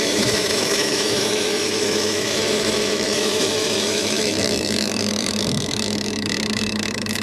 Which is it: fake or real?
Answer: fake